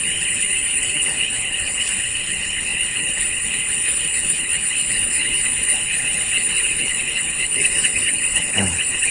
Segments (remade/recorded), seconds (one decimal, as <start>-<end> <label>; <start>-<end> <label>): 0.0-9.1 remade